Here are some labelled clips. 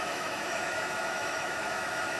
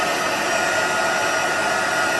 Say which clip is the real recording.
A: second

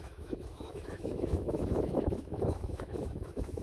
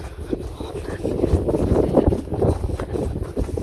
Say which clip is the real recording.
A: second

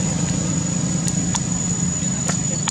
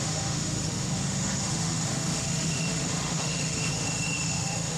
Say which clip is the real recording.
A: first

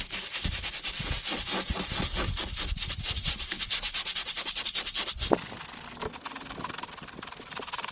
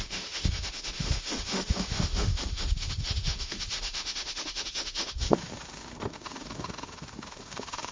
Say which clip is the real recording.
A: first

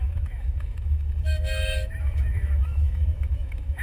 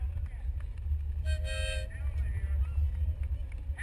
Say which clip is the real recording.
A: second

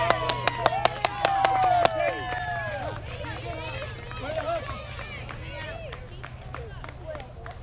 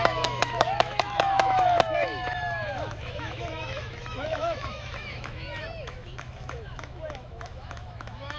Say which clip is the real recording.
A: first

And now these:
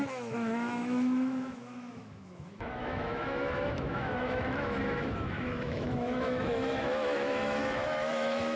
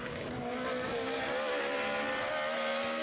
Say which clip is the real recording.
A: second